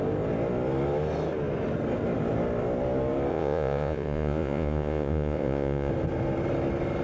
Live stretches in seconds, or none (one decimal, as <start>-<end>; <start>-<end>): 0.0-3.3; 5.9-7.0